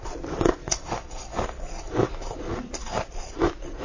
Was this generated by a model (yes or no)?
no